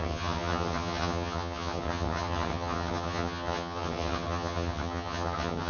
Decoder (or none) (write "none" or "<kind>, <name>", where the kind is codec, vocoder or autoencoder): vocoder, HiFi-GAN